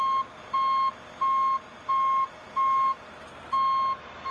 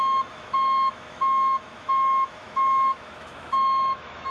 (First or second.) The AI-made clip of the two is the second